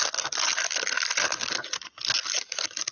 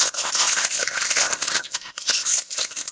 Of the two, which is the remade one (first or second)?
second